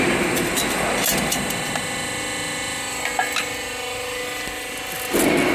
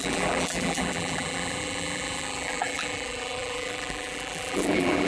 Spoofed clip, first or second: second